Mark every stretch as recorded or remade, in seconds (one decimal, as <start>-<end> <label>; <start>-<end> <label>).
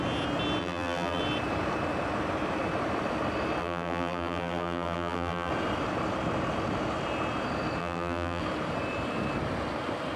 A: 0.0-0.6 recorded; 0.6-1.2 remade; 1.2-3.6 recorded; 3.6-5.5 remade; 5.5-7.8 recorded; 7.8-8.4 remade; 8.4-10.2 recorded